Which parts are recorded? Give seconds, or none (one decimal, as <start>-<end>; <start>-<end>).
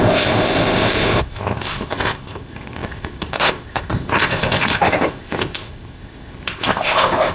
none